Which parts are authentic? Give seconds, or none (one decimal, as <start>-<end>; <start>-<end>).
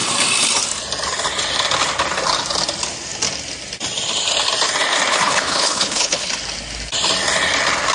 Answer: 0.0-5.1; 6.3-7.9